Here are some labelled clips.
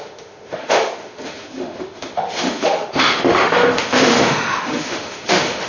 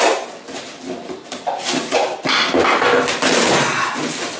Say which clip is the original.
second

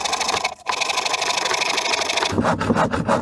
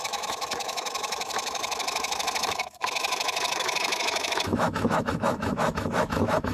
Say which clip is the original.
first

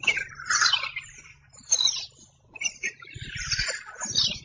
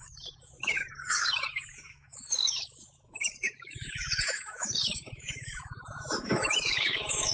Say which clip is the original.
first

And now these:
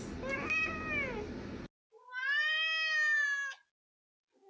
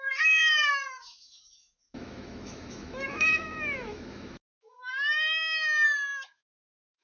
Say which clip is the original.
first